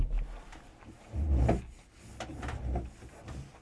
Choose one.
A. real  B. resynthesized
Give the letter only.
A